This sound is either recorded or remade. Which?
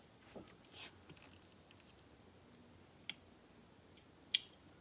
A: recorded